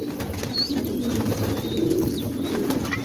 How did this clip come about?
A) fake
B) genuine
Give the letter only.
B